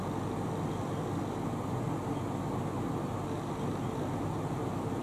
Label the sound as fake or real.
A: real